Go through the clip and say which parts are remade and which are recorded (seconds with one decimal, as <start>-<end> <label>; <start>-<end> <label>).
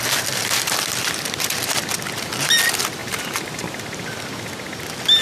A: 0.0-3.0 recorded; 3.0-3.8 remade; 3.8-5.2 recorded